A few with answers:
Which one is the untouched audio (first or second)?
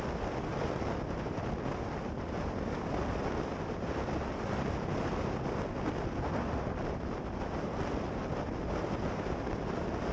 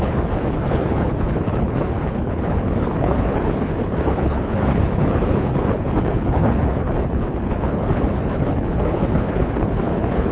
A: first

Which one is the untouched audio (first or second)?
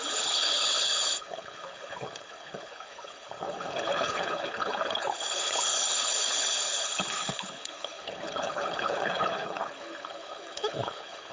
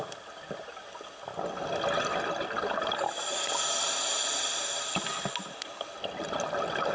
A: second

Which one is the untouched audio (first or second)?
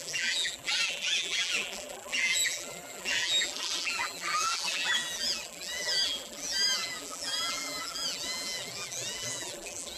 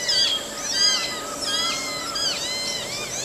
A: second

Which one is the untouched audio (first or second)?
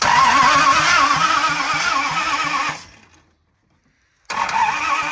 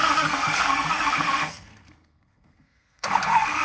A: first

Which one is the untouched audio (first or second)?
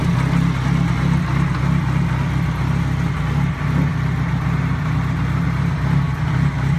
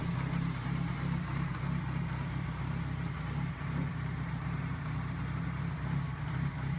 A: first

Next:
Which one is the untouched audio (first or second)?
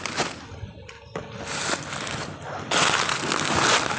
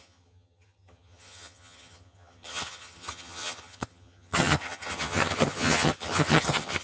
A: first